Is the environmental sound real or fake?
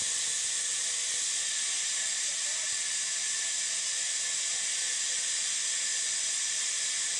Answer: real